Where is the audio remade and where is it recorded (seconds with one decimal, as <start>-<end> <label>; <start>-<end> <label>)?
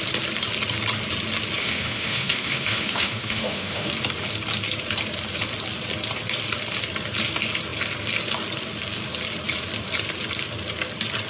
0.0-1.6 recorded; 1.6-3.9 remade; 3.9-11.3 recorded